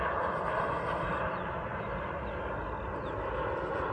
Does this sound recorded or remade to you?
recorded